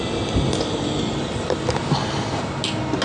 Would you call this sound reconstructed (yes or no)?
no